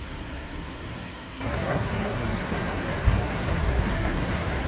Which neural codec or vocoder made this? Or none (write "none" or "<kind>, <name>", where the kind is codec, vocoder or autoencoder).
codec, SNAC